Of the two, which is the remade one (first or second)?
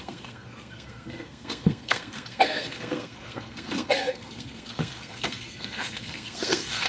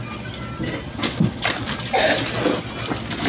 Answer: first